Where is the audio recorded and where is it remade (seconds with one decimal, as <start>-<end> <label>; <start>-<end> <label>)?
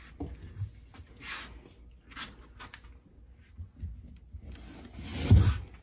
0.0-5.8 recorded